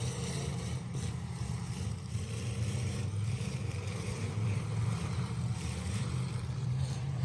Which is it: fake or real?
fake